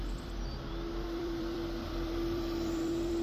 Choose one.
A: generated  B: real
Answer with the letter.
A